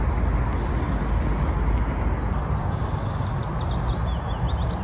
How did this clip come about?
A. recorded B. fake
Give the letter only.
A